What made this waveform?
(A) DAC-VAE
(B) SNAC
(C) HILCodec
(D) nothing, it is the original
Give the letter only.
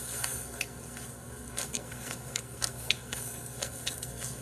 B